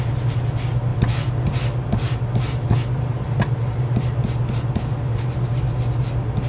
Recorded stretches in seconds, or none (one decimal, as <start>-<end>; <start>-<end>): 0.0-6.5